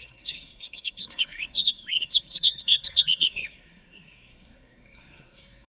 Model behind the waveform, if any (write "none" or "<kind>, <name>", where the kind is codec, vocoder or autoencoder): codec, SNAC